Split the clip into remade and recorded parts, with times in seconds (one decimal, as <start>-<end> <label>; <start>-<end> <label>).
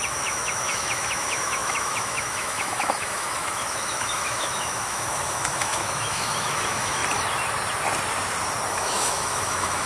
0.0-7.0 remade; 7.0-8.7 recorded; 8.7-9.9 remade